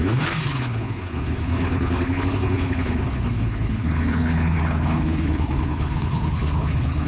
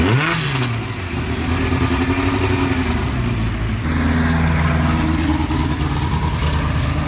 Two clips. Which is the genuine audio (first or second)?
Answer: second